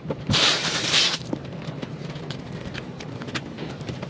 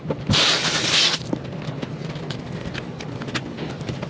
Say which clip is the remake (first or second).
first